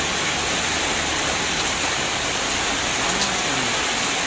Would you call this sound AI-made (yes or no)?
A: no